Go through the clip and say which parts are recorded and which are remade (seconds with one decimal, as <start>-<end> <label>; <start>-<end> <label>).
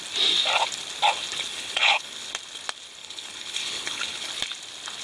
0.0-1.5 recorded; 1.5-2.3 remade; 2.3-3.0 recorded; 3.0-4.3 remade; 4.3-5.0 recorded